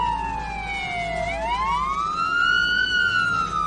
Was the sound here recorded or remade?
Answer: recorded